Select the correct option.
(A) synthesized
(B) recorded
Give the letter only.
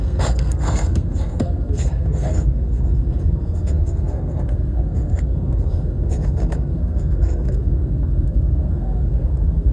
A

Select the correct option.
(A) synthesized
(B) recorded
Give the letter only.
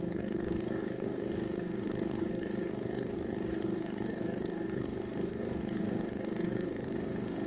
A